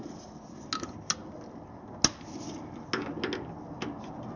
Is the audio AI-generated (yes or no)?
no